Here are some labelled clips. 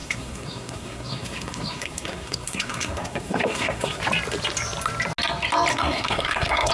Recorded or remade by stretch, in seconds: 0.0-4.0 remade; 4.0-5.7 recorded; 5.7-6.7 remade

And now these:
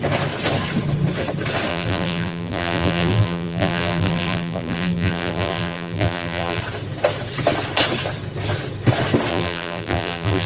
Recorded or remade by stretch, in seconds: 0.0-1.7 recorded; 1.7-6.6 remade; 6.6-9.3 recorded; 9.3-10.5 remade

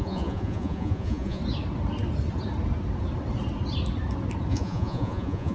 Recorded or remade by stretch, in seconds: 0.0-1.4 remade; 1.4-4.5 recorded; 4.5-5.5 remade

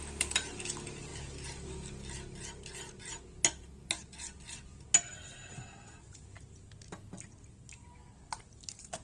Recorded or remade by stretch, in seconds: 0.0-9.0 recorded